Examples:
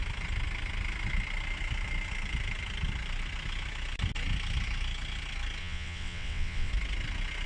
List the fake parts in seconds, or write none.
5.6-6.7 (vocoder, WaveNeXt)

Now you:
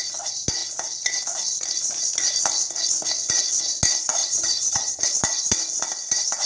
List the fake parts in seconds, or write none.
4.2-5.0 (vocoder, HiFi-GAN)